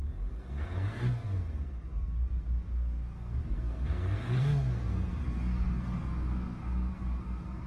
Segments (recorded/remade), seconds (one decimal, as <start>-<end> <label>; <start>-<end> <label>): 0.0-7.7 remade